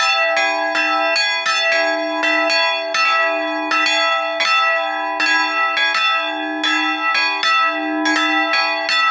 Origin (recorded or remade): recorded